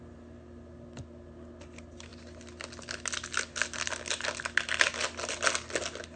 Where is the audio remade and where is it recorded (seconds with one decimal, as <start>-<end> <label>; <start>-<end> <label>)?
0.0-6.2 recorded